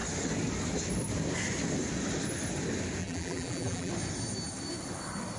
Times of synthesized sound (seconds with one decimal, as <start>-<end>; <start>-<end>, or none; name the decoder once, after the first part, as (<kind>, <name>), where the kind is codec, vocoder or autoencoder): 3.0-3.9 (vocoder, BigVGAN v2)